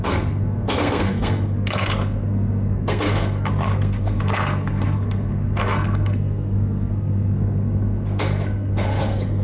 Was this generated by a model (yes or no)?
yes